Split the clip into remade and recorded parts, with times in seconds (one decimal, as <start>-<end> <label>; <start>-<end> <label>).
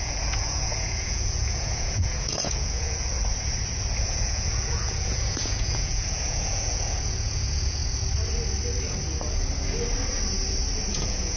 0.0-3.1 remade; 3.1-4.0 recorded; 4.0-7.8 remade; 7.8-10.9 recorded; 10.9-11.4 remade